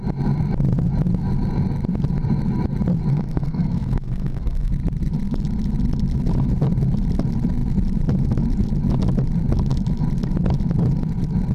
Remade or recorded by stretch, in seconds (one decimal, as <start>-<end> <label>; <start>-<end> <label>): 0.0-3.1 recorded; 3.1-4.7 remade; 4.7-11.5 recorded